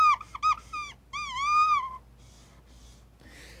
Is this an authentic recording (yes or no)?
yes